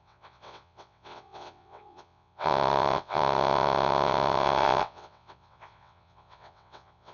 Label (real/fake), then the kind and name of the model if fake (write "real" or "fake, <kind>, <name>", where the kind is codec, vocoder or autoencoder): fake, vocoder, WaveNeXt